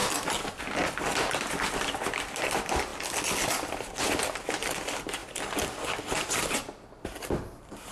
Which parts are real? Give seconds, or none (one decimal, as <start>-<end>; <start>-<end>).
0.0-7.9

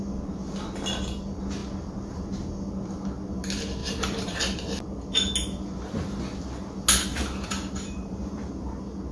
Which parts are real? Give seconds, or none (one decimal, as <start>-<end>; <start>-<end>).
0.0-3.8; 4.4-7.1; 8.5-9.1

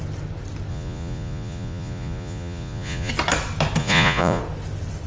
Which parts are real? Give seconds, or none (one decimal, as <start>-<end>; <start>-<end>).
0.0-0.7; 3.1-3.8; 4.4-5.1

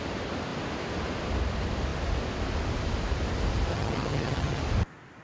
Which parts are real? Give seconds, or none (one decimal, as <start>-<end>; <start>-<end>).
0.0-3.7; 4.6-5.2

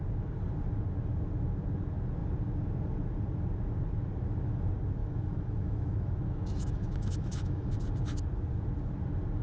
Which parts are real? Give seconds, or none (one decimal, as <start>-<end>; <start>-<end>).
0.0-5.0; 7.7-9.4

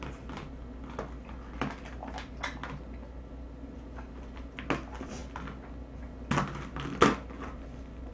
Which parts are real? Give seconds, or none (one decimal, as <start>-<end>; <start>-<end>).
0.0-8.1

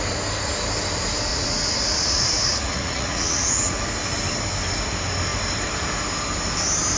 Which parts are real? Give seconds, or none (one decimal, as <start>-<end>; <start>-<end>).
0.0-1.3; 3.8-7.0

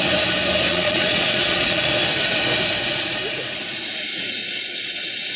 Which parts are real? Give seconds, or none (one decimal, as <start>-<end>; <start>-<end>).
0.0-0.7; 1.9-4.4